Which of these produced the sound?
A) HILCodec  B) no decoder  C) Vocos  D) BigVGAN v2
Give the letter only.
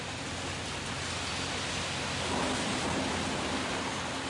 B